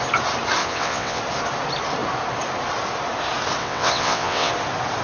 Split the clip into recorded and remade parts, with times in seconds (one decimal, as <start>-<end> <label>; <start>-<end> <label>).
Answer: 0.0-0.6 recorded; 0.6-1.2 remade; 1.2-3.6 recorded; 3.6-4.5 remade; 4.5-5.0 recorded